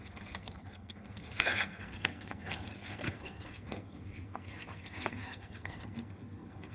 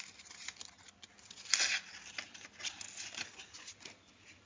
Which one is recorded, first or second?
second